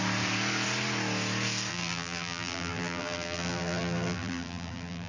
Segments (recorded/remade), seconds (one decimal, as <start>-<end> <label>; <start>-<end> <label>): 0.0-1.7 recorded; 1.7-5.1 remade